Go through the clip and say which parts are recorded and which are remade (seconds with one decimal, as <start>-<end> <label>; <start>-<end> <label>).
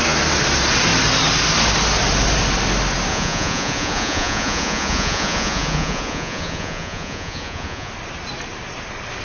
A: 0.0-3.1 recorded; 3.1-7.9 remade; 7.9-9.2 recorded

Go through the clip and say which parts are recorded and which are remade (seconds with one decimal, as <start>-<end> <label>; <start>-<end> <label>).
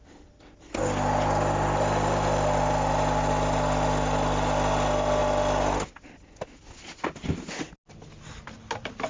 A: 0.0-9.1 recorded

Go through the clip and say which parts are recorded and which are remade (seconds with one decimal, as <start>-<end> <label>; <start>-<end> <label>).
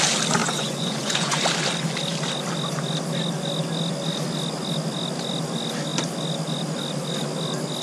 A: 0.0-0.4 recorded; 0.4-1.4 remade; 1.4-7.8 recorded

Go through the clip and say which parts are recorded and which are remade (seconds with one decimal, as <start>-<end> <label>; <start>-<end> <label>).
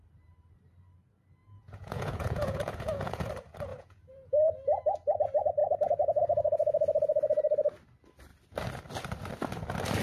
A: 0.0-1.4 recorded; 1.4-3.3 remade; 3.3-3.7 recorded; 3.7-4.6 remade; 4.6-5.6 recorded; 5.6-6.2 remade; 6.2-10.0 recorded